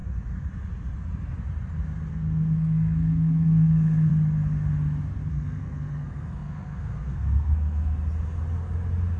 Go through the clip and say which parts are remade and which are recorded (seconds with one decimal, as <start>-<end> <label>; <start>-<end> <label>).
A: 0.0-2.1 recorded; 2.1-4.1 remade; 4.1-5.3 recorded; 5.3-8.0 remade; 8.0-9.2 recorded